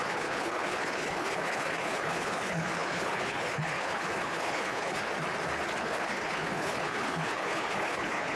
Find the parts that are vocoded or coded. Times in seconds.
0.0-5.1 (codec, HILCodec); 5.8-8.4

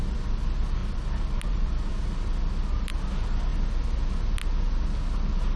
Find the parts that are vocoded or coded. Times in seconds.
0.8-1.9 (vocoder, BigVGAN v2)

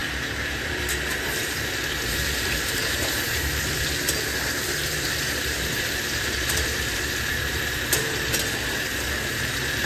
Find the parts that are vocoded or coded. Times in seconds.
0.0-9.9 (vocoder, BigVGAN v2)

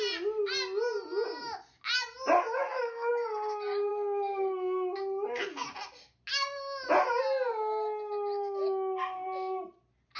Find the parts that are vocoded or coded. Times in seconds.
2.6-3.1 (autoencoder, DAC-VAE)

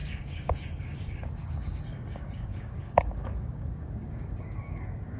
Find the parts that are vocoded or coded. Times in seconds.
0.0-5.2 (codec, DAC)